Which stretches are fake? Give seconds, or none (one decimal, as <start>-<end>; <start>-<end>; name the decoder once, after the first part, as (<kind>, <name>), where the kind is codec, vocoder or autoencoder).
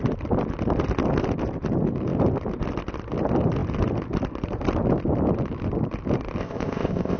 6.4-7.2 (codec, ZipCodec)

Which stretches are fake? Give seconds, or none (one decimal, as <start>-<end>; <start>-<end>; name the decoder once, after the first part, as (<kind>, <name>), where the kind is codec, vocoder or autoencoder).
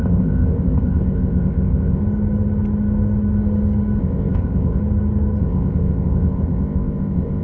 0.0-2.0 (codec, ZipCodec); 4.0-4.8; 5.4-7.4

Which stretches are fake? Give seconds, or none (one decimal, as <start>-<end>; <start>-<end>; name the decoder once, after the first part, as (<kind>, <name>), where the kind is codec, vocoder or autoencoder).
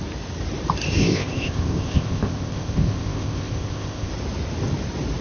1.0-4.1 (codec, ZipCodec)